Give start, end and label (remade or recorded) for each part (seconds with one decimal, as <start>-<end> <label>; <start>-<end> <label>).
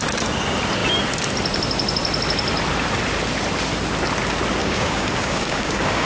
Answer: 0.0-4.6 recorded; 4.6-6.1 remade